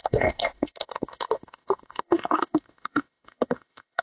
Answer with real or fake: fake